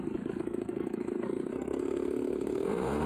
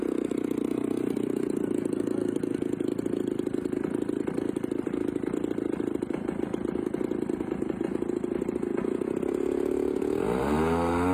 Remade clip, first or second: first